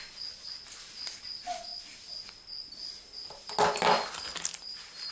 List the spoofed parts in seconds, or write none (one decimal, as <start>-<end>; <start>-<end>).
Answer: none